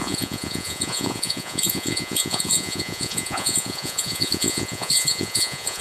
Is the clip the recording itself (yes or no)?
no